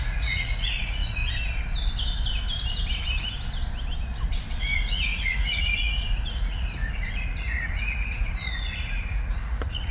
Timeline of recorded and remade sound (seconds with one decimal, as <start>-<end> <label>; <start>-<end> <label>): 0.0-1.2 remade; 1.2-4.6 recorded; 4.6-9.9 remade